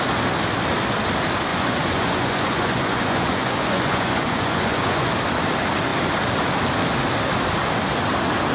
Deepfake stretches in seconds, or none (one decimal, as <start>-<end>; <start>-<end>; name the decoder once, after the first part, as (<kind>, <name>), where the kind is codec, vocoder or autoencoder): 1.5-5.1 (vocoder, Vocos)